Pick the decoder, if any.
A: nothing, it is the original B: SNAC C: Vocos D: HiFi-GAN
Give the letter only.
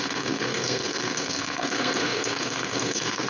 B